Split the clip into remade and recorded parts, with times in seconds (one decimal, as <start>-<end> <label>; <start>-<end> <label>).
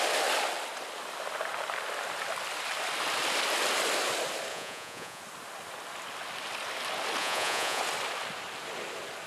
0.0-4.5 recorded; 4.5-5.2 remade; 5.2-7.2 recorded; 7.2-7.8 remade; 7.8-9.3 recorded